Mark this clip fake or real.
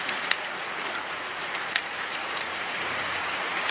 fake